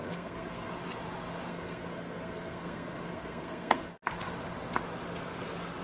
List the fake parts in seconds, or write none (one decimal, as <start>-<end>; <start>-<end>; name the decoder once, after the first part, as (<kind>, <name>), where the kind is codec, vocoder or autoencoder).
0.0-0.7 (codec, SNAC); 1.5-3.9